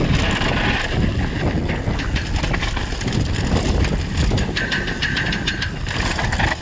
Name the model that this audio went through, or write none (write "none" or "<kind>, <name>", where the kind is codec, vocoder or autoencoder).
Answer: none